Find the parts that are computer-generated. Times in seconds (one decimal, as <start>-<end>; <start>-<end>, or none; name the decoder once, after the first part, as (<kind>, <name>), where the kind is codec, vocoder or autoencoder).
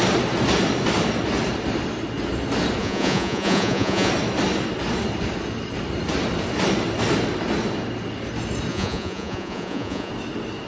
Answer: 2.8-4.1 (vocoder, Vocos); 8.7-10.1